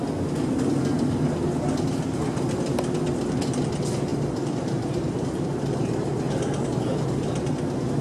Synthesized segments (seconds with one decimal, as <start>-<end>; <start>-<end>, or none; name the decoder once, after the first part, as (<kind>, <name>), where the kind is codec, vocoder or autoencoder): 4.1-6.2 (vocoder, BigVGAN v2)